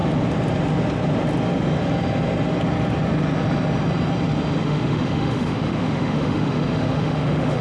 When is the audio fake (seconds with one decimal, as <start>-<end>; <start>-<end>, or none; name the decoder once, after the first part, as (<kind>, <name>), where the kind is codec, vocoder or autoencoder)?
4.6-7.6 (autoencoder, DAC-VAE)